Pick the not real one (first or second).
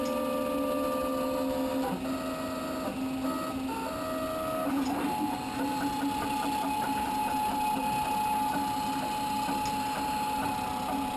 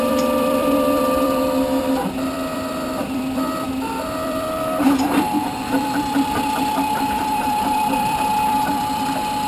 second